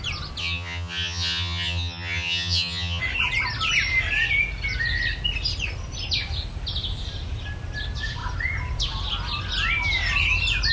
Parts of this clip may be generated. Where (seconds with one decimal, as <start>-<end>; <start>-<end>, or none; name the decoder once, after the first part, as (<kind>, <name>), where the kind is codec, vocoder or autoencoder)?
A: 0.4-3.0 (vocoder, HiFi-GAN)